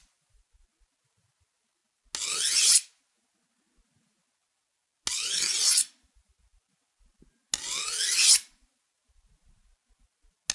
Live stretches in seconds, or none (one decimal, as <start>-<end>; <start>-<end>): 0.0-10.5